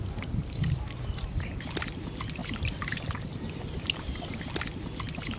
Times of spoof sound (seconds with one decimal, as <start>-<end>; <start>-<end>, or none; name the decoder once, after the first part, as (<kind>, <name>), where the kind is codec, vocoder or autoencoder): none